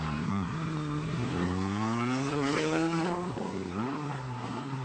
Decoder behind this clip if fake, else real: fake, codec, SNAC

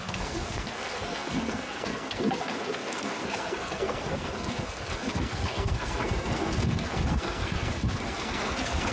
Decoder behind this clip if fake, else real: fake, codec, SNAC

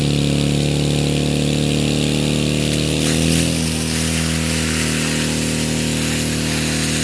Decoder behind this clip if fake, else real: real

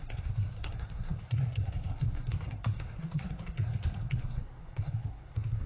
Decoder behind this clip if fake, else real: fake, codec, SNAC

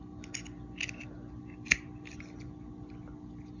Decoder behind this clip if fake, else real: real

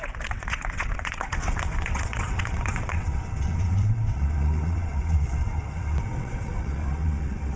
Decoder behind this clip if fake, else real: fake, vocoder, WaveNeXt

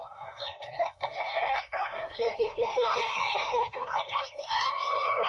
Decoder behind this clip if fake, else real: fake, codec, SNAC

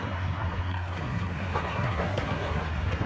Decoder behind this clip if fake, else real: fake, codec, SNAC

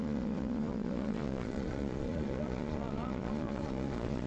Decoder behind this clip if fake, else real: fake, vocoder, Vocos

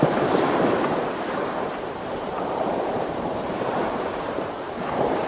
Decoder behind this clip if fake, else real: fake, vocoder, BigVGAN v2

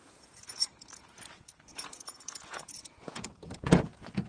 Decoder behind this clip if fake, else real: fake, vocoder, Vocos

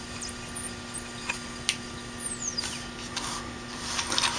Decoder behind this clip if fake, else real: real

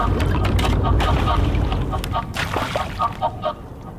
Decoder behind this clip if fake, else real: real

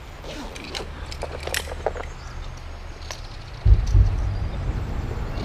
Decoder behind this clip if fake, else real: real